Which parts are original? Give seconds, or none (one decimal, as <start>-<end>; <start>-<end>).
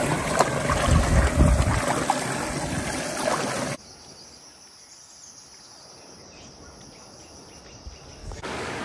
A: 0.0-8.2